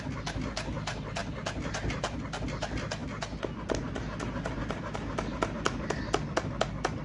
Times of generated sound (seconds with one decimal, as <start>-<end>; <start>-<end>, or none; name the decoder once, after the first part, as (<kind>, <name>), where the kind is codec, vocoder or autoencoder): none